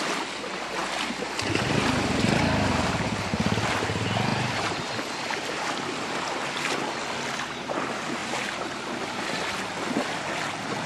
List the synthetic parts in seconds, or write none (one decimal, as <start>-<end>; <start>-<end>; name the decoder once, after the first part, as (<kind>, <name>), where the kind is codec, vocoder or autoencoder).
none